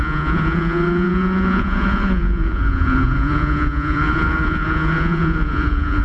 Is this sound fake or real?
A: fake